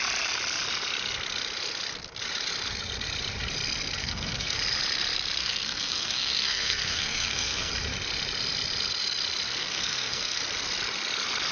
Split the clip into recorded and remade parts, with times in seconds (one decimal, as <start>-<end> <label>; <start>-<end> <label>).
0.0-4.0 recorded; 4.0-4.6 remade; 4.6-5.4 recorded; 5.4-7.7 remade; 7.7-9.6 recorded; 9.6-10.4 remade; 10.4-11.5 recorded